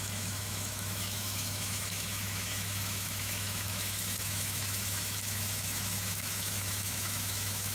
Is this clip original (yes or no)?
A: no